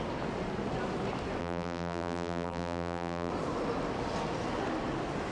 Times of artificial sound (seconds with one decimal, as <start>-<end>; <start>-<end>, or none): 1.4-3.3